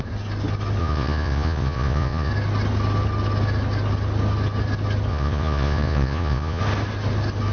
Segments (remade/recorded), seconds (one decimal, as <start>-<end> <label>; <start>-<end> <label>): 0.0-0.8 recorded; 0.8-2.3 remade; 2.3-5.1 recorded; 5.1-6.6 remade; 6.6-7.5 recorded